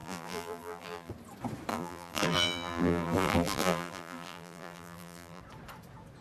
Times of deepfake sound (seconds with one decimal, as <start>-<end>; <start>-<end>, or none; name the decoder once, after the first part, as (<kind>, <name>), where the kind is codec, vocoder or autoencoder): 0.0-1.1 (vocoder, BigVGAN v2); 1.7-5.4

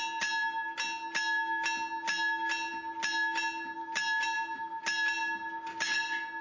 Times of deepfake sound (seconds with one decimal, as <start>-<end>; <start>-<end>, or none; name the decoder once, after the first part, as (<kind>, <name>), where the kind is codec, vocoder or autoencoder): none